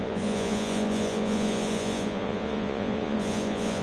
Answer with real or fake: fake